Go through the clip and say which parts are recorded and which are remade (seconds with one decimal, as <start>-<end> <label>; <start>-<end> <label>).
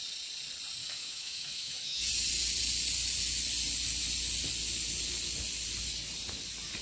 0.0-0.8 recorded; 0.8-2.1 remade; 2.1-6.8 recorded